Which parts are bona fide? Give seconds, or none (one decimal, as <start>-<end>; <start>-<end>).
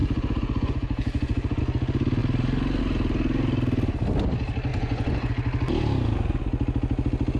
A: 1.6-4.7; 5.3-7.4